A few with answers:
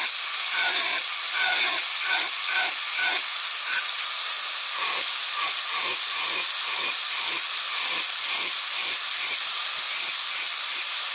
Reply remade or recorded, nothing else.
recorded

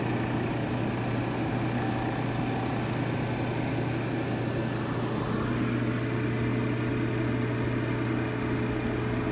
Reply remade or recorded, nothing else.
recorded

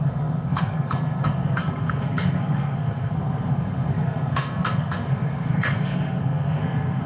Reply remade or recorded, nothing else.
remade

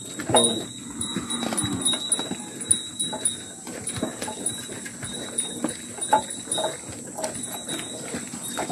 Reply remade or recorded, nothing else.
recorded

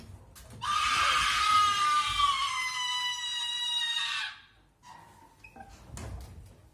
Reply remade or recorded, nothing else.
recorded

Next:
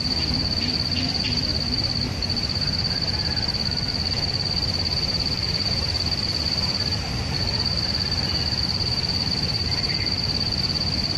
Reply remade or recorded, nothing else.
remade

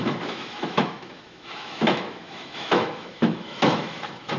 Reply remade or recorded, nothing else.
remade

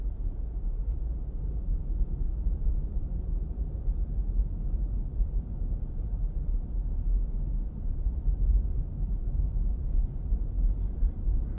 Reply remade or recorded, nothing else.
remade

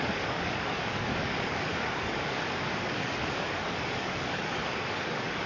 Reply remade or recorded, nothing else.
remade